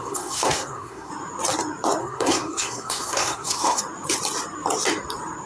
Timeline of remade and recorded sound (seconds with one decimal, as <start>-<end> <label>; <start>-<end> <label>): 0.0-1.1 remade; 1.1-2.0 recorded; 2.0-3.8 remade; 3.8-5.5 recorded